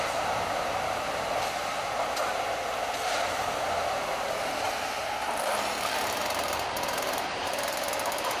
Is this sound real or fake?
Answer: fake